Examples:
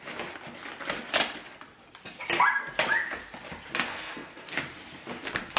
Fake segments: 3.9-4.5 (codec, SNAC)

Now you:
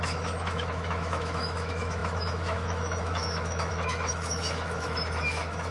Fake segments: 0.0-5.7 (autoencoder, DAC-VAE)

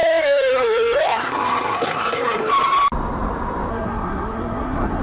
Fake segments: 0.0-2.4 (codec, SNAC); 3.7-5.0

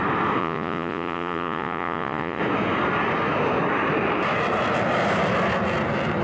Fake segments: 0.4-2.4 (vocoder, Vocos)

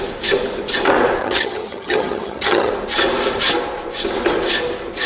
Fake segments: 1.2-2.7 (vocoder, HiFi-GAN)